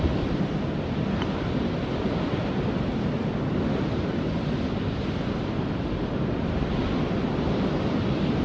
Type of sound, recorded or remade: recorded